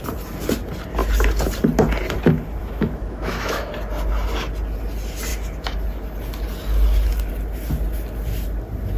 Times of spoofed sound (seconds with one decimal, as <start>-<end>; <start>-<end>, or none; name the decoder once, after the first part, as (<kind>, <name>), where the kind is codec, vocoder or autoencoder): 2.6-3.7 (autoencoder, DAC-VAE)